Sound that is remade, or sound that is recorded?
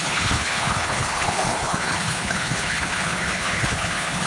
remade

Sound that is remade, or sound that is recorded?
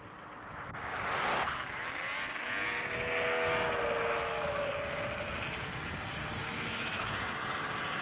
recorded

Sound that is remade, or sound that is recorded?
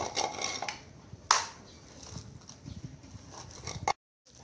recorded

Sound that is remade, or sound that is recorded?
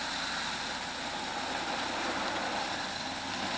recorded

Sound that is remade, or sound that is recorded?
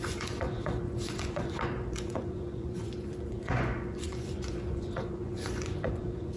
remade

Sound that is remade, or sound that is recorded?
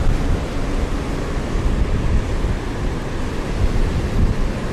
recorded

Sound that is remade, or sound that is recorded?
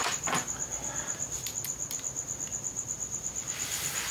recorded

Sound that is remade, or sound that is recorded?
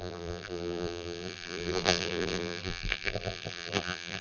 remade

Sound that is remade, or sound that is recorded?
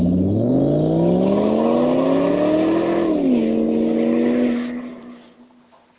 recorded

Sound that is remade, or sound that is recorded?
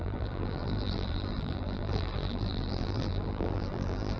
remade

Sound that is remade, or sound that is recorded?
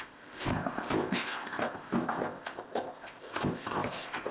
remade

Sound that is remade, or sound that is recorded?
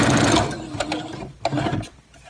recorded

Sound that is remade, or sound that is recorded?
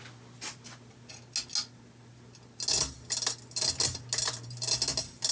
recorded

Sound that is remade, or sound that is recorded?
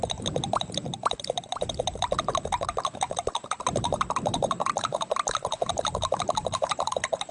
remade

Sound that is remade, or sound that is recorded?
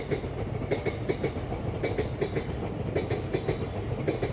recorded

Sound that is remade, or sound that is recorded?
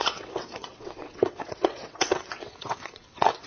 remade